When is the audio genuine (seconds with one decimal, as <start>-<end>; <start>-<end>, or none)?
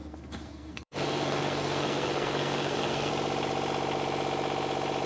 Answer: 3.1-5.1